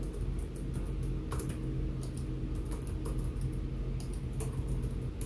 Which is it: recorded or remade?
recorded